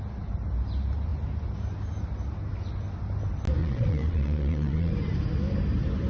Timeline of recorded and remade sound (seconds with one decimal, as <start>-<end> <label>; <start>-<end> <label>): 0.0-3.6 recorded; 3.6-4.9 remade; 4.9-6.1 recorded